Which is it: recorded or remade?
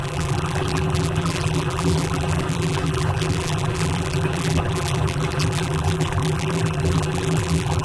remade